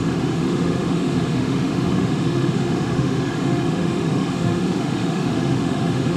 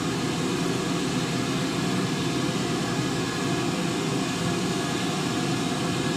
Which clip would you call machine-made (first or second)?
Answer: first